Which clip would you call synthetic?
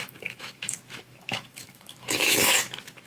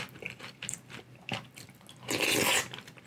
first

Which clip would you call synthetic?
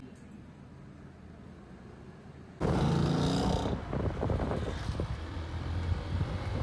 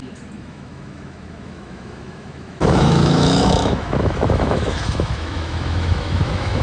second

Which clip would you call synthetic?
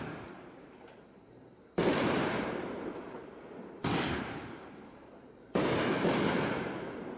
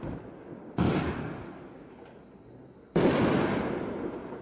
first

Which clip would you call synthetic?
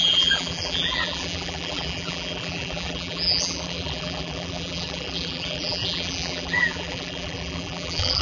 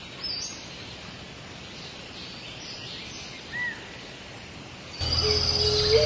first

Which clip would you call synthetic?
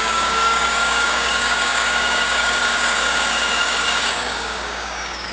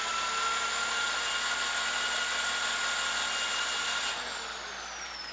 first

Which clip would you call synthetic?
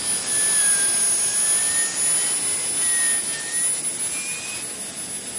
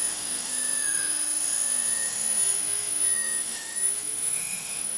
second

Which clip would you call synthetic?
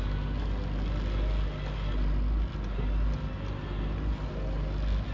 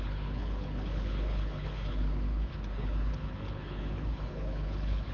second